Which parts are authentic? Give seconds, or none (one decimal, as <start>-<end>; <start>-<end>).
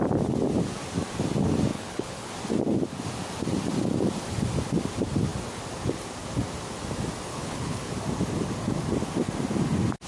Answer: 0.0-1.7; 2.3-7.3; 7.9-10.1